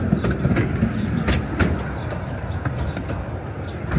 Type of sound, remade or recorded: recorded